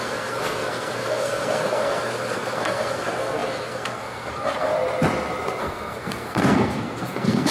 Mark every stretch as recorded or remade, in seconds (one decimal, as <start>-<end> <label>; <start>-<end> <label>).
0.0-4.7 remade; 4.7-5.6 recorded; 5.6-7.5 remade